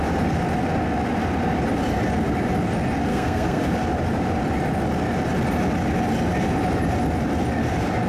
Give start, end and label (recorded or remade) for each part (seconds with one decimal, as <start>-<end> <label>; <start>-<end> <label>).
0.0-3.1 recorded; 3.1-3.6 remade; 3.6-8.1 recorded